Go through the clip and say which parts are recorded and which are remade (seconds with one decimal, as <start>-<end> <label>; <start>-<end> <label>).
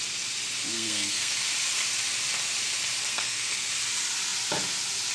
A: 0.0-0.7 recorded; 0.7-1.5 remade; 1.5-3.1 recorded; 3.1-3.7 remade; 3.7-5.1 recorded